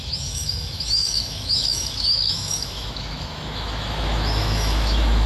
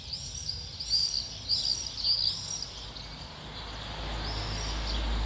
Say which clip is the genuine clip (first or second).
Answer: second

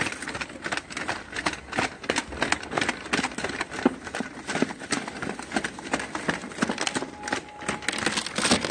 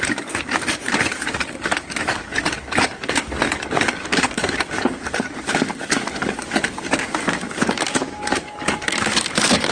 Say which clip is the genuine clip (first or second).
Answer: first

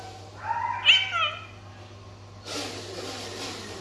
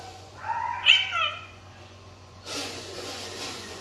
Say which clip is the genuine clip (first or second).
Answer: first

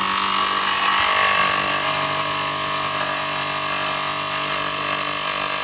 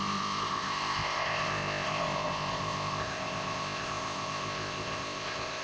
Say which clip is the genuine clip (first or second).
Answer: first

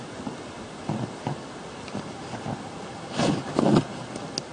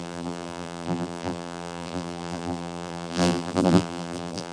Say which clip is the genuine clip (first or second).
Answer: first